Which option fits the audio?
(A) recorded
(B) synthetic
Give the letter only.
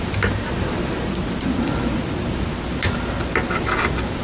A